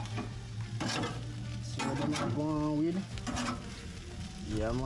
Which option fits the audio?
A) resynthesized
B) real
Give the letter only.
B